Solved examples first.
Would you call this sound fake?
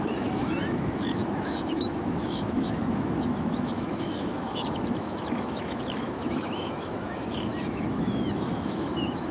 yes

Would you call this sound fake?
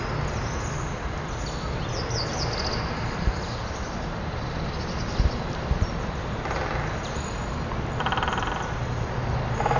no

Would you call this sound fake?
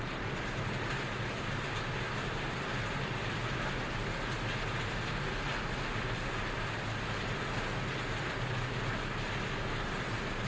no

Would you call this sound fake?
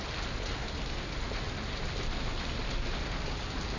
no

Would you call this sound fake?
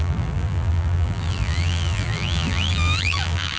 yes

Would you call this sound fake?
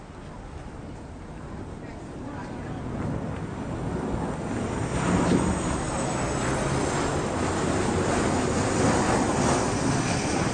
no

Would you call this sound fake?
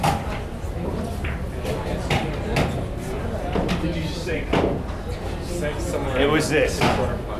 no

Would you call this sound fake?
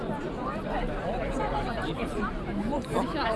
yes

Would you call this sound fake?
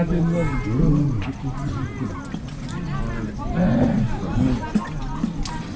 no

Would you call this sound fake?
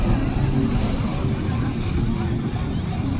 no